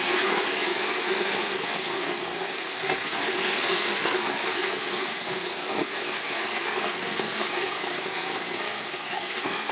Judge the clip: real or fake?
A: fake